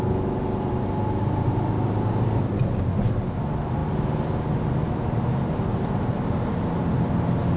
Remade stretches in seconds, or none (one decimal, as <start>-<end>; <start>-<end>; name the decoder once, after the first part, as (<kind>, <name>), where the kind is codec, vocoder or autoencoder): none